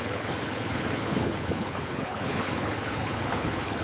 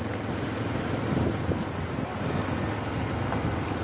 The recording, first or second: second